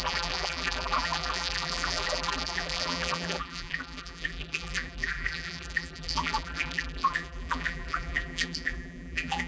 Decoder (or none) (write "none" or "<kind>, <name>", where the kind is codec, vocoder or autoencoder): vocoder, BigVGAN v2